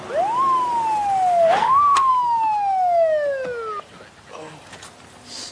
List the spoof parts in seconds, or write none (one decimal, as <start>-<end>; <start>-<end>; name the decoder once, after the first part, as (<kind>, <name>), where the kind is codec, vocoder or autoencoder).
1.6-2.1 (codec, SNAC)